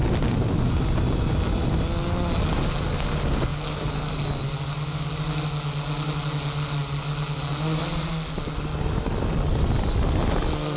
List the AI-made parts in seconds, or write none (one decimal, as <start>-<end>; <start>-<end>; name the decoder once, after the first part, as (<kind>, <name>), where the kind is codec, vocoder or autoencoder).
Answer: none